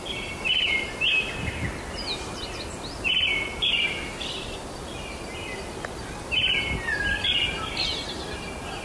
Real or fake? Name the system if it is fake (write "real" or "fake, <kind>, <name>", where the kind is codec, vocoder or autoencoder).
real